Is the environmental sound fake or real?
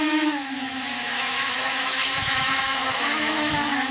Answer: fake